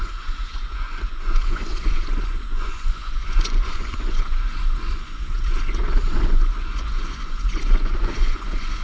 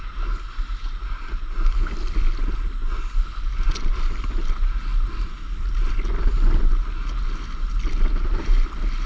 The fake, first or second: first